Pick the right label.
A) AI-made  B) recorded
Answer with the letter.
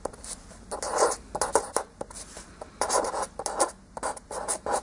B